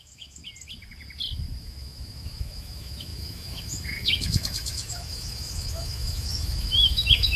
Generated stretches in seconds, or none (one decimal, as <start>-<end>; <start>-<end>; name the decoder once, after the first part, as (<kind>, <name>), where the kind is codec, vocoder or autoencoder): 0.0-0.4 (autoencoder, DAC-VAE); 1.6-7.4